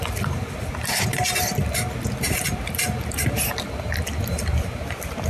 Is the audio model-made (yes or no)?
no